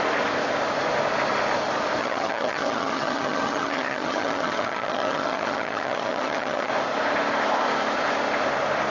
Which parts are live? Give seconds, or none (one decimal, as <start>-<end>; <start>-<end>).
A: 0.0-2.0; 6.7-8.9